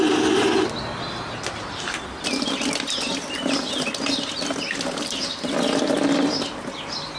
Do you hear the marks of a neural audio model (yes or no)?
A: no